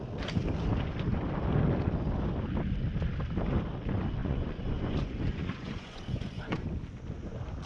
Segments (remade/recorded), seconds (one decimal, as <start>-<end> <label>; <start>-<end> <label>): 0.0-4.2 recorded; 4.2-6.6 remade; 6.6-7.7 recorded